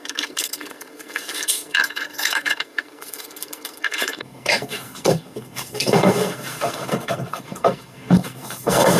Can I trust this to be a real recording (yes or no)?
no